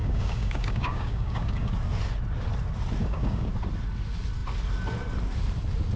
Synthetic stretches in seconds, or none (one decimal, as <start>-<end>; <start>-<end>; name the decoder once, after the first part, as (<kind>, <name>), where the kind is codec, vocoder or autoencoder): 0.0-1.7 (codec, DAC); 3.0-3.5